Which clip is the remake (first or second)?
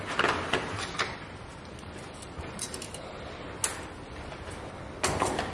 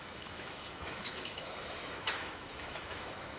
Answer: second